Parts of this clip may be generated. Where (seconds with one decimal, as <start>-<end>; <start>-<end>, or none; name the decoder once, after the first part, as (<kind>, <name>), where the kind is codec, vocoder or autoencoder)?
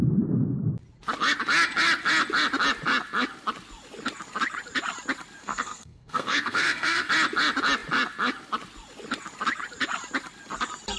5.4-7.1 (codec, SNAC)